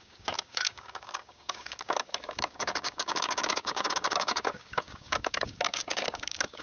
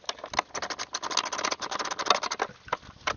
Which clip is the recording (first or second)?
second